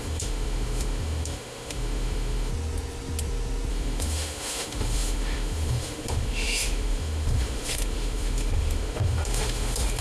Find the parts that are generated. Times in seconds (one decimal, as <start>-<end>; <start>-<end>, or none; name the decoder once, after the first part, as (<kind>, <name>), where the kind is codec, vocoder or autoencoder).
0.0-2.5 (autoencoder, DAC-VAE); 3.7-10.0

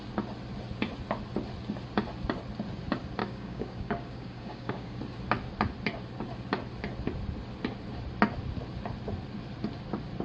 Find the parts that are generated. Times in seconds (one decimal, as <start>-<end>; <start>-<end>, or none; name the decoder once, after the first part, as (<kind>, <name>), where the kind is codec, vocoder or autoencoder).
3.2-5.0 (codec, DAC)